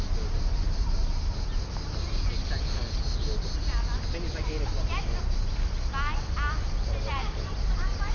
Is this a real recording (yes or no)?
yes